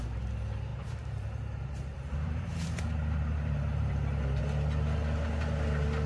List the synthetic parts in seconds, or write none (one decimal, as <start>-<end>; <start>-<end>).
0.7-4.4